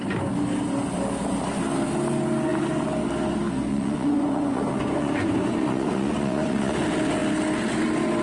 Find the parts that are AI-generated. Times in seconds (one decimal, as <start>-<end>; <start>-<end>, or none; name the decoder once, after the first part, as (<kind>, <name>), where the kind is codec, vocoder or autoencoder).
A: 3.7-6.8 (vocoder, Vocos)